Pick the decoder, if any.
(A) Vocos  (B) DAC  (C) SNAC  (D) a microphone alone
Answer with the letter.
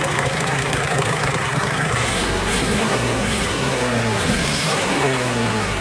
C